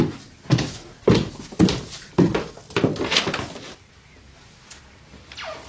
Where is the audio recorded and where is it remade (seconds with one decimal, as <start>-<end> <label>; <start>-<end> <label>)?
0.0-5.7 recorded